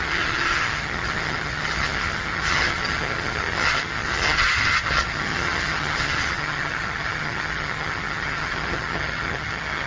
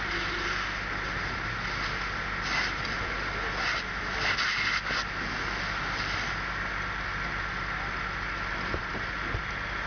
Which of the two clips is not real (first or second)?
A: first